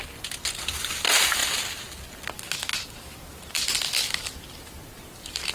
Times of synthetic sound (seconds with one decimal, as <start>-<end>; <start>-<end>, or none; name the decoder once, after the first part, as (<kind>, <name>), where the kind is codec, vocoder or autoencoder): none